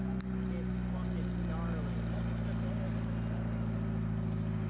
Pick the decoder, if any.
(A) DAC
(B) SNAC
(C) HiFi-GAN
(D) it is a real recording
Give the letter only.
D